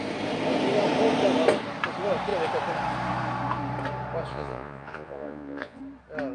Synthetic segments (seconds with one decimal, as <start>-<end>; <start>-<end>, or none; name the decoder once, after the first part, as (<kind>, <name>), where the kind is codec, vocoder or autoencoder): 4.3-5.8 (vocoder, Vocos)